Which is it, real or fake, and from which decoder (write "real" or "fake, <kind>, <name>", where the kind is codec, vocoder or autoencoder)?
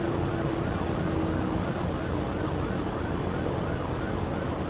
real